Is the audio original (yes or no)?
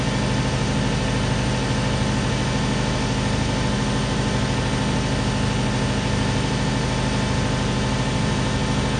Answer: yes